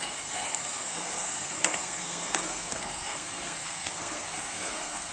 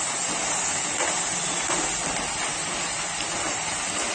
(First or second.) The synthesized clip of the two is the first